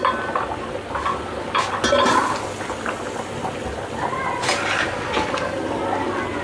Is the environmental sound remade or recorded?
recorded